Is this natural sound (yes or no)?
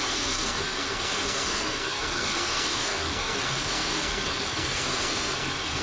no